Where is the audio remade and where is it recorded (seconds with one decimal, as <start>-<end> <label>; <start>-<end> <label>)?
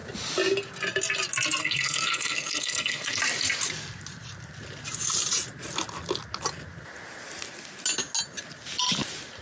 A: 0.0-1.6 recorded; 1.6-3.2 remade; 3.2-9.4 recorded